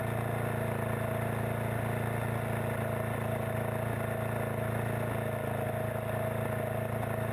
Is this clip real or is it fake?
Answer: real